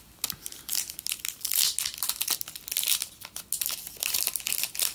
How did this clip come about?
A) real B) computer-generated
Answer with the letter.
A